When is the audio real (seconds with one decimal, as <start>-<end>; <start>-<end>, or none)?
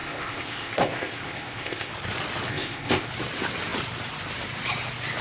1.9-2.5; 3.1-5.2